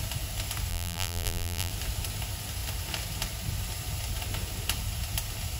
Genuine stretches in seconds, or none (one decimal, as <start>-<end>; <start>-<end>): 0.0-0.7; 1.7-5.6